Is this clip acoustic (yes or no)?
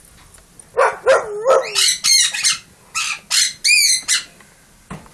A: yes